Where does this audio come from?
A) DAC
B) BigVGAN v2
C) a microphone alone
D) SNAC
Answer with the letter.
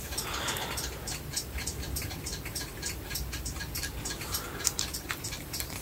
B